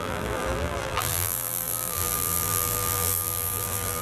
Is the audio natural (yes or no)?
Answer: no